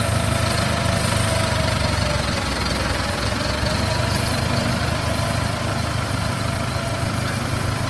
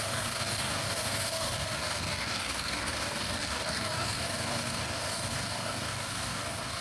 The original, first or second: first